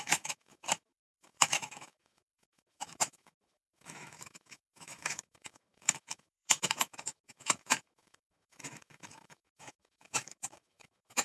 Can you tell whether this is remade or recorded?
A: remade